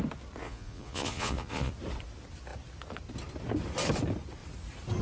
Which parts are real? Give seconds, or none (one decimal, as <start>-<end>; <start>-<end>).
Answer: 0.0-0.4; 1.7-5.0